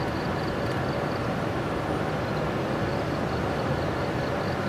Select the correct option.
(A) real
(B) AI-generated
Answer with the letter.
A